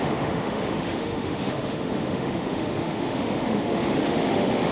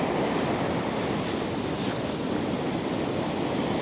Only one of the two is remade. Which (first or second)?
first